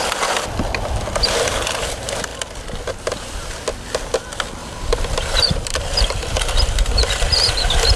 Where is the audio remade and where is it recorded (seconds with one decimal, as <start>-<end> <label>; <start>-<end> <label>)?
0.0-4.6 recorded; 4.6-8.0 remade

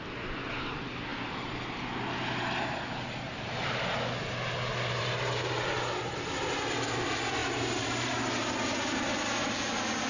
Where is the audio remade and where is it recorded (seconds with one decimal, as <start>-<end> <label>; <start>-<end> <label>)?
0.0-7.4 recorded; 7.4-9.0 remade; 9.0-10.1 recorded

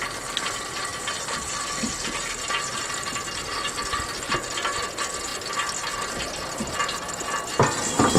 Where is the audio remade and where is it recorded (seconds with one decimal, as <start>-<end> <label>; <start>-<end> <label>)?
0.0-0.9 recorded; 0.9-3.1 remade; 3.1-8.2 recorded

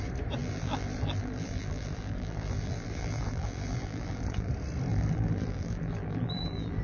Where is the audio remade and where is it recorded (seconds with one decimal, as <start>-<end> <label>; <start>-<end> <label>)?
0.0-0.4 recorded; 0.4-4.5 remade; 4.5-4.9 recorded; 4.9-6.8 remade